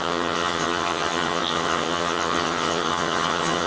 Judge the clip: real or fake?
fake